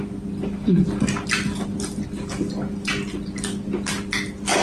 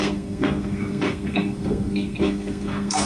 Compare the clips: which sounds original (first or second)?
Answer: first